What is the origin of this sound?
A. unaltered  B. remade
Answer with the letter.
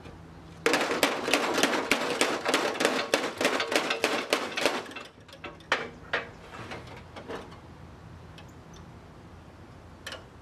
A